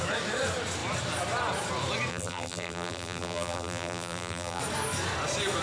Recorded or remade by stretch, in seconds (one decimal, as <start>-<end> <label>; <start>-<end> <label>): 0.0-2.1 recorded; 2.1-4.6 remade; 4.6-5.6 recorded